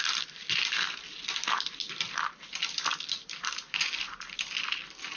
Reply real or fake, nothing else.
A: real